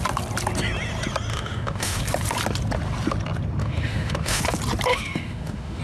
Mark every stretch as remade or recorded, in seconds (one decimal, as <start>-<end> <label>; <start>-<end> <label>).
0.0-1.3 recorded; 1.3-2.0 remade; 2.0-3.6 recorded; 3.6-4.4 remade; 4.4-4.9 recorded; 4.9-5.8 remade